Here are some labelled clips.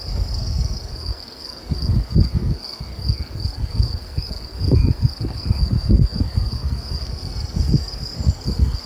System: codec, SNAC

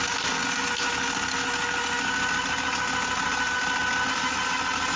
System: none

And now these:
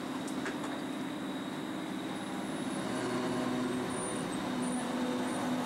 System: none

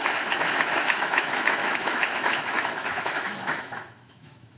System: autoencoder, DAC-VAE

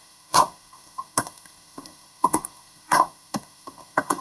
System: codec, SNAC